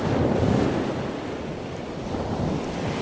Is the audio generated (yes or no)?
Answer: no